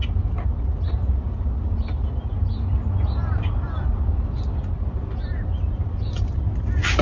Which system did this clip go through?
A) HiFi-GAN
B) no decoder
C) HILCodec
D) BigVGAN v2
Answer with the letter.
B